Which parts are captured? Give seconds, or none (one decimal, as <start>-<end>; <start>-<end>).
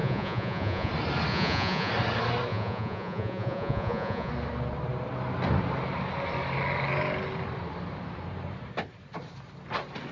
0.9-1.3; 1.9-2.5; 4.3-10.1